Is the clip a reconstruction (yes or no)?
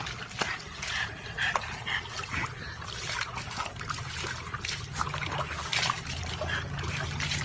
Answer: no